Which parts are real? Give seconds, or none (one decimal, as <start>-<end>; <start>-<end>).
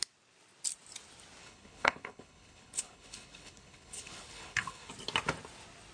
0.0-1.4; 4.9-5.9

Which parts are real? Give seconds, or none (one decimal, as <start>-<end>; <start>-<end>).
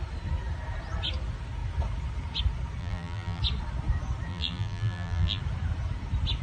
0.0-2.8; 3.4-4.3; 5.4-6.4